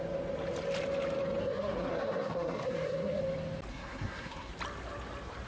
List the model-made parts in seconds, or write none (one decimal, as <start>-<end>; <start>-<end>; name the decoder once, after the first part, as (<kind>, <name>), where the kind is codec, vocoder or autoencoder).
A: 1.4-3.2 (codec, SNAC); 3.7-4.5